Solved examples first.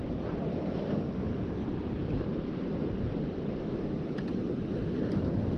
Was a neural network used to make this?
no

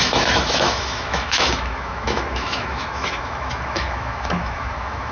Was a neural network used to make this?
yes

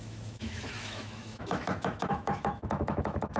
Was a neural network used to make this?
yes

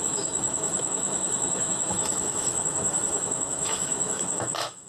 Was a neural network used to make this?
yes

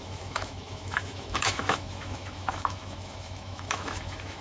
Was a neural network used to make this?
yes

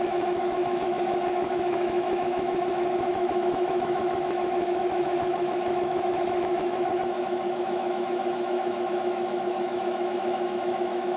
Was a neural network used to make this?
yes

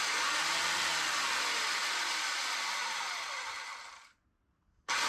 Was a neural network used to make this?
no